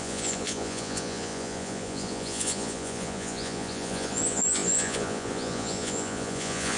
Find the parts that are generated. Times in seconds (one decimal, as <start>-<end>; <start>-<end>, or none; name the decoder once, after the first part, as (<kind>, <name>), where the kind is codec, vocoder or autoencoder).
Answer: 0.0-6.8 (vocoder, Vocos)

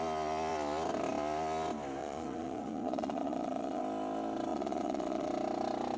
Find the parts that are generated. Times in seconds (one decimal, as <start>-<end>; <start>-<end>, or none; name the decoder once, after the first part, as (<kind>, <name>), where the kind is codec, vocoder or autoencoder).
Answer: 2.0-3.8 (vocoder, Vocos); 4.5-5.3

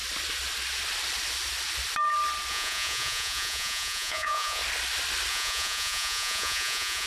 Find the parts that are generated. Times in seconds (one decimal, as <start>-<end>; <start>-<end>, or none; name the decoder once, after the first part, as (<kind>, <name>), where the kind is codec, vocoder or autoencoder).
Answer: 2.5-4.6 (vocoder, Vocos); 5.3-7.1

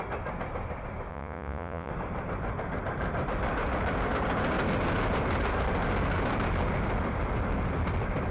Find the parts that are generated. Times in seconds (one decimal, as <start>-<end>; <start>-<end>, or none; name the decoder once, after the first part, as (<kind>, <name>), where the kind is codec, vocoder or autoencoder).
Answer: 1.1-1.9 (vocoder, Vocos)

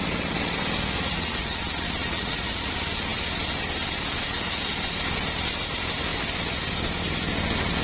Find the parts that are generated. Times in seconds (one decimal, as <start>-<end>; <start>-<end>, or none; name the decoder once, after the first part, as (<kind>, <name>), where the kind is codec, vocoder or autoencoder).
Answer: 1.0-1.6 (vocoder, Vocos); 2.0-2.7